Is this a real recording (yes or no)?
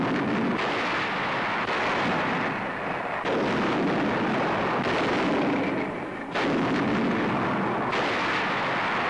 yes